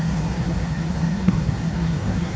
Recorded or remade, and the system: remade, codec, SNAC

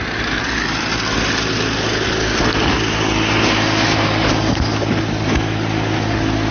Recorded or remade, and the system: recorded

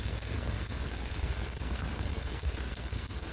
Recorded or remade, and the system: remade, codec, SNAC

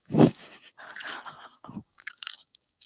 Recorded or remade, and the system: remade, codec, DAC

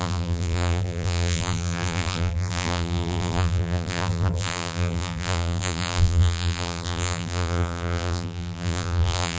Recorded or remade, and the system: remade, vocoder, BigVGAN v2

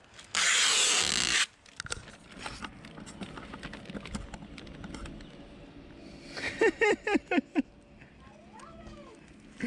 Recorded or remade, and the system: recorded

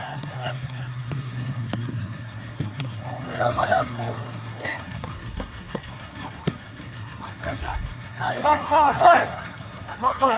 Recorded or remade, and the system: remade, codec, SNAC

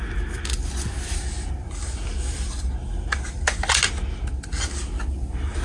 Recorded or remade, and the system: recorded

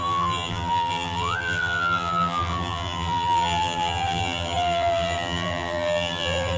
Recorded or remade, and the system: remade, vocoder, BigVGAN v2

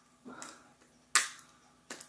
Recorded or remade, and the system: recorded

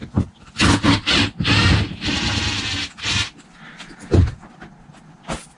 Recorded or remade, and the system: recorded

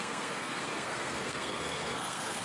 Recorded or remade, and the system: remade, codec, SNAC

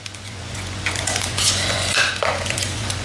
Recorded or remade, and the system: remade, vocoder, Vocos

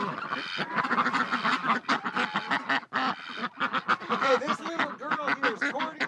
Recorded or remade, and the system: recorded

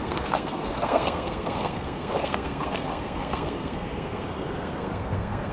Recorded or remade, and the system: remade, codec, SNAC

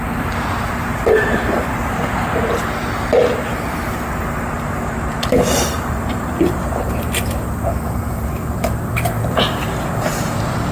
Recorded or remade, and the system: remade, vocoder, BigVGAN v2